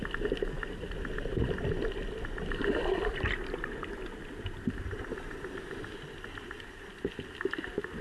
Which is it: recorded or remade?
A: recorded